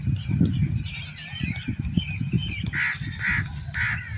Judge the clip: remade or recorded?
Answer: recorded